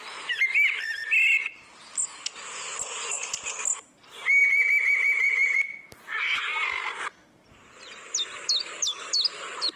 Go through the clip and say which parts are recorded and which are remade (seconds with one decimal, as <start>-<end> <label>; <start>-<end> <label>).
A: 0.0-9.8 recorded